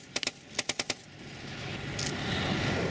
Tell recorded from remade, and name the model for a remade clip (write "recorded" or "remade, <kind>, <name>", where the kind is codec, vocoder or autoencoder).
recorded